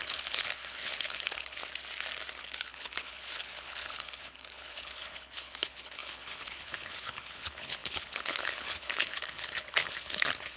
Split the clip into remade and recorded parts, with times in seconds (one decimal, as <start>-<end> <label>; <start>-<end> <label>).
0.0-1.6 remade; 1.6-2.4 recorded; 2.4-10.6 remade